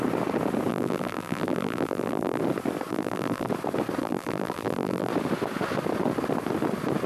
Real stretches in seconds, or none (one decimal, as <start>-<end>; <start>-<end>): 0.0-0.7; 2.4-2.9; 3.5-4.0; 5.1-7.1